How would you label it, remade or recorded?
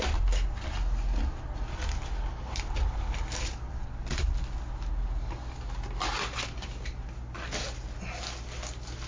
recorded